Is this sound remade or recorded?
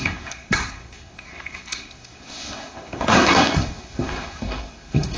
remade